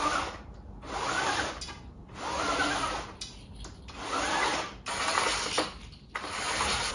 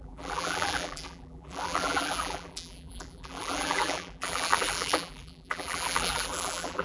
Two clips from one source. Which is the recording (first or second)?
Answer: first